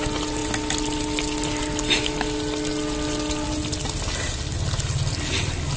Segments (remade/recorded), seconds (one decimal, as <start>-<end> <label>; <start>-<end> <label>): 0.0-5.8 recorded

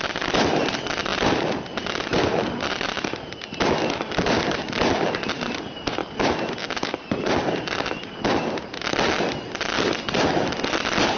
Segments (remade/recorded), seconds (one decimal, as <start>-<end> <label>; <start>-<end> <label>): 0.0-11.2 recorded

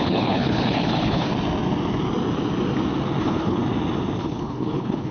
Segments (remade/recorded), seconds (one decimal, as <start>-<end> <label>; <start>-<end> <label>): 0.0-1.3 remade; 1.3-3.2 recorded; 3.2-3.6 remade; 3.6-4.2 recorded; 4.2-5.1 remade

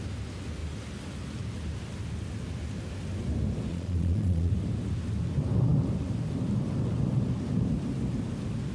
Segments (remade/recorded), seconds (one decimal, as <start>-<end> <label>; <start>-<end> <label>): 0.0-3.7 recorded; 3.7-4.5 remade; 4.5-8.7 recorded

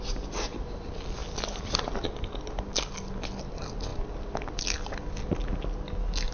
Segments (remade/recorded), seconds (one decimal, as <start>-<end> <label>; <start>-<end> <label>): 0.0-6.3 recorded

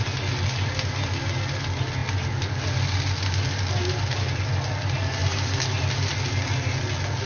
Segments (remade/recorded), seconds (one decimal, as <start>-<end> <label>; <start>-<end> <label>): 0.0-7.3 recorded

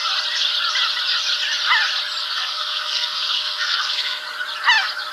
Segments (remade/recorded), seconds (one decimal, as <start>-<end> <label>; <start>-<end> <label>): 0.0-2.2 recorded; 2.2-4.2 remade; 4.2-5.1 recorded